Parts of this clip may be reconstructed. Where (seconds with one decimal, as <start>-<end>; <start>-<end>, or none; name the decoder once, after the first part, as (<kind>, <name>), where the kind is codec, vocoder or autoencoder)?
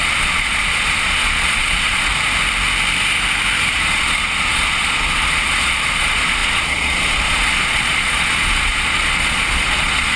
0.0-2.1 (vocoder, Vocos); 3.7-10.2